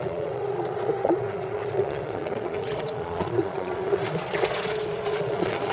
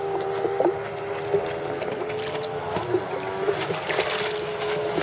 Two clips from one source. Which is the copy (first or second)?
first